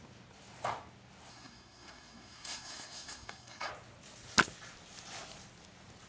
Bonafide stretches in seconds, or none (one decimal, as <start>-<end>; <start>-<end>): 0.0-1.3; 3.7-6.1